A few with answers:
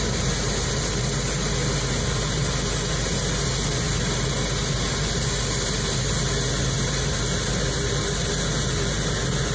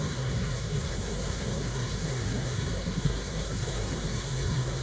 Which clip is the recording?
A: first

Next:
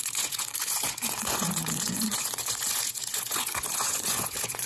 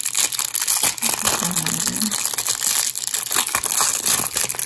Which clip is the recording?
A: second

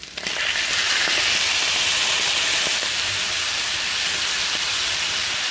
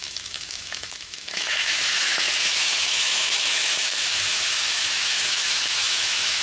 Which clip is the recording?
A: first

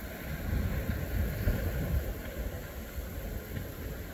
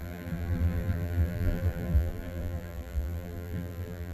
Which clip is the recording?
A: first